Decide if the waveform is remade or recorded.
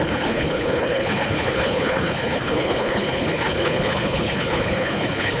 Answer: remade